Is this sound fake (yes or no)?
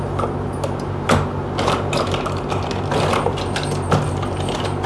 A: no